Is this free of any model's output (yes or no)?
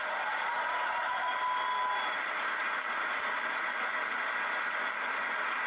yes